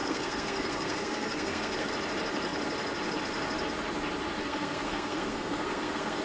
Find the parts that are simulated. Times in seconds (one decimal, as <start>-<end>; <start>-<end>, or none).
0.0-1.9; 4.4-6.2